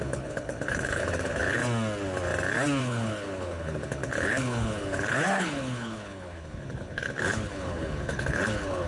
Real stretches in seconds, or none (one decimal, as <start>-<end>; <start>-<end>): 1.6-2.8